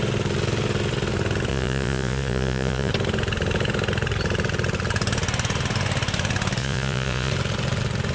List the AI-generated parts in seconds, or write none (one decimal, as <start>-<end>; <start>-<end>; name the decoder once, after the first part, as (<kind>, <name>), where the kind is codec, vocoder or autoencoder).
1.5-2.9 (vocoder, Vocos); 6.6-7.3